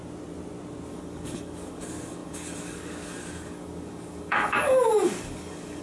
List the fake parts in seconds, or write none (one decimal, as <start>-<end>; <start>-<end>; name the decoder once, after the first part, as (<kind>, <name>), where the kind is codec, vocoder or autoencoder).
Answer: 0.9-5.8 (codec, DAC)

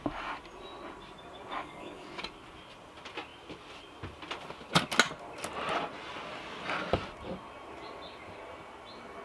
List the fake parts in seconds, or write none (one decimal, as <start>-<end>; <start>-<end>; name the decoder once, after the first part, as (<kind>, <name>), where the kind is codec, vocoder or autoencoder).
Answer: 1.5-2.1 (codec, DAC)